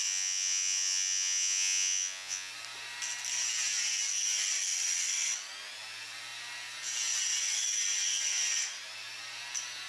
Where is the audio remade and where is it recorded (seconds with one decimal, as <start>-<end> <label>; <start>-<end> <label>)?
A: 0.0-2.5 remade; 2.5-9.9 recorded

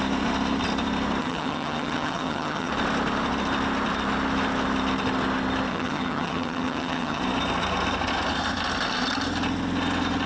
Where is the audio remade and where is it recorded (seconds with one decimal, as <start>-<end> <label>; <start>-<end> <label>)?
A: 0.0-1.2 recorded; 1.2-2.7 remade; 2.7-5.7 recorded; 5.7-7.2 remade; 7.2-10.3 recorded

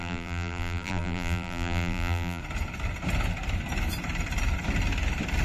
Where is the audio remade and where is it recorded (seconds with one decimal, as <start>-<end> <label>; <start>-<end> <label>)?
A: 0.0-2.4 remade; 2.4-5.4 recorded

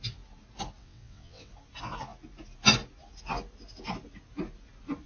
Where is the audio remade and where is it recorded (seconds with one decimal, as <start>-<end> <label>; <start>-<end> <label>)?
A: 0.0-0.8 recorded; 0.8-1.5 remade; 1.5-5.1 recorded

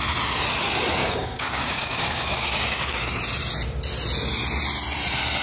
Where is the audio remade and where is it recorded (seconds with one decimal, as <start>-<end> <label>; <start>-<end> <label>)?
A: 0.0-1.0 recorded; 1.0-3.2 remade; 3.2-5.4 recorded

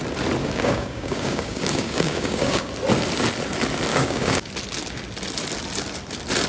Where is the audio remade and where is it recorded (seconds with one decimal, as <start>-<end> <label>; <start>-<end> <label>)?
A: 0.0-0.4 recorded; 0.4-2.7 remade; 2.7-3.9 recorded; 3.9-4.5 remade; 4.5-6.5 recorded